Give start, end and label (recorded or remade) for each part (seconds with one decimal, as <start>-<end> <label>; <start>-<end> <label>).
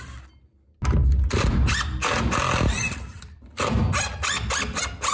0.0-5.1 recorded